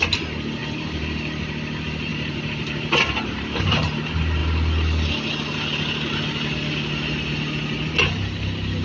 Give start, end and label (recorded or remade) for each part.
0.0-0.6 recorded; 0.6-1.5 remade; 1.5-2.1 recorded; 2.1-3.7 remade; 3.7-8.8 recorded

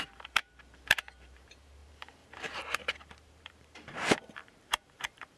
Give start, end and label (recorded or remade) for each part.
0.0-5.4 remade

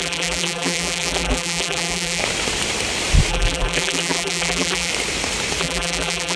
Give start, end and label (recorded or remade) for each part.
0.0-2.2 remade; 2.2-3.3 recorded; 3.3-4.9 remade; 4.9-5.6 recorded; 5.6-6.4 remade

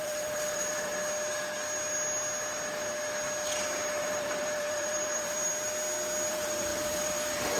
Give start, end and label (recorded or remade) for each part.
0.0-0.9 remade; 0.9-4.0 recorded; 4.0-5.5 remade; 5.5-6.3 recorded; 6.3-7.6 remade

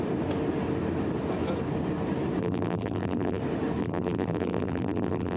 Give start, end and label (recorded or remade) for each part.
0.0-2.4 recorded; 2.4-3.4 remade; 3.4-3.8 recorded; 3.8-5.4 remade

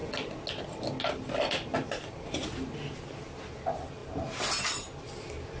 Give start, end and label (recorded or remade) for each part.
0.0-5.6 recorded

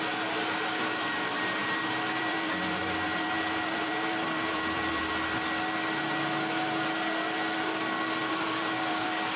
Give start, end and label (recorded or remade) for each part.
0.0-1.6 recorded; 1.6-5.1 remade; 5.1-8.2 recorded; 8.2-9.4 remade

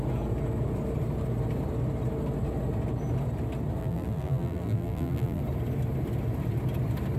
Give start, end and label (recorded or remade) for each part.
0.0-3.8 recorded; 3.8-5.4 remade; 5.4-7.2 recorded